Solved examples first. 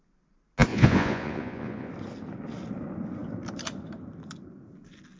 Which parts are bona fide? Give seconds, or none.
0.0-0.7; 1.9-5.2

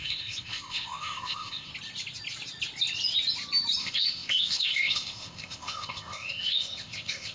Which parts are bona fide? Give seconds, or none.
1.7-3.8

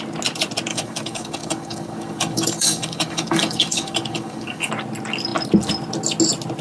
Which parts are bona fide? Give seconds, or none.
0.0-0.7; 4.7-6.6

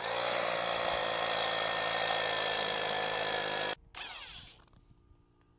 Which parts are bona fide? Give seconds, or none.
0.0-5.6

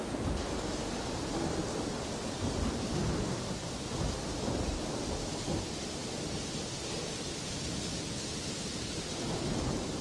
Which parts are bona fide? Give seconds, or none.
0.0-10.0